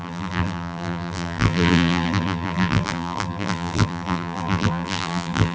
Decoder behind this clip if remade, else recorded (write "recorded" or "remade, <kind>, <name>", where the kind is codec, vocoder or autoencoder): remade, vocoder, BigVGAN v2